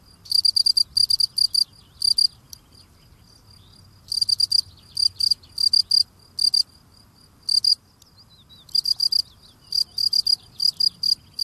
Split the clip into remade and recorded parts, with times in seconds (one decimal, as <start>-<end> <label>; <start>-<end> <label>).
0.0-11.4 recorded